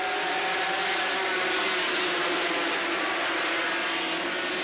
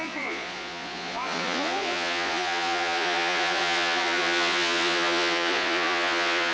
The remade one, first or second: second